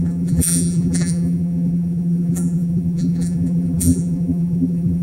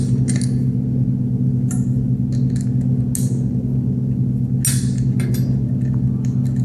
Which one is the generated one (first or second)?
first